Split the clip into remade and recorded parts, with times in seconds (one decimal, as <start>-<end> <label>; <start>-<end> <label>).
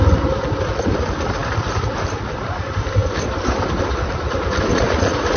0.0-4.7 recorded; 4.7-5.4 remade